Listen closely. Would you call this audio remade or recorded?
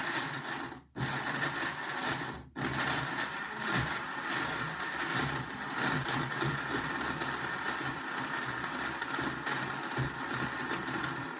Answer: recorded